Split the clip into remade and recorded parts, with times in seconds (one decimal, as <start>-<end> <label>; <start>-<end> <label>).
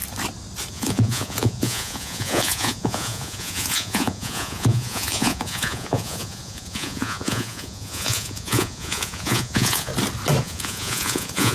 0.0-0.7 recorded; 0.7-9.9 remade; 9.9-10.4 recorded; 10.4-11.5 remade